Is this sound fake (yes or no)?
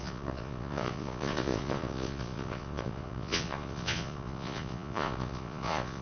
yes